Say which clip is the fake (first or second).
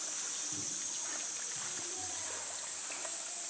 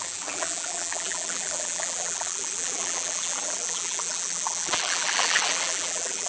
second